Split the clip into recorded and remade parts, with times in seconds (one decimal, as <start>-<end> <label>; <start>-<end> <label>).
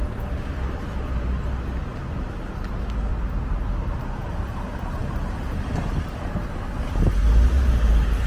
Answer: 0.0-3.1 recorded; 3.1-4.0 remade; 4.0-8.3 recorded